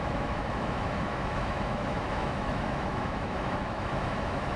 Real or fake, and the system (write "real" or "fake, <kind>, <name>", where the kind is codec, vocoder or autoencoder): fake, autoencoder, DAC-VAE